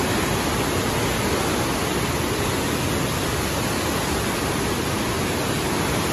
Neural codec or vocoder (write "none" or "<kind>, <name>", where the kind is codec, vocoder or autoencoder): none